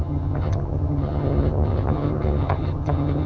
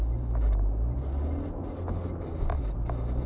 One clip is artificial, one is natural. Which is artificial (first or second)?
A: first